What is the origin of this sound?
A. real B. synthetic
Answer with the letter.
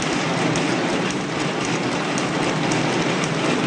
A